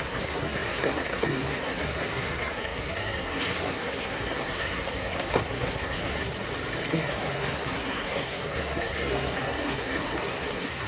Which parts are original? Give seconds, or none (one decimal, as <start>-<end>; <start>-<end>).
6.3-6.9